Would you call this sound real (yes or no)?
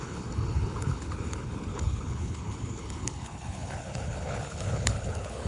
no